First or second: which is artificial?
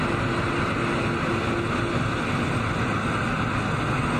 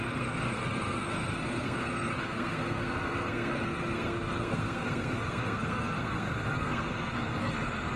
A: second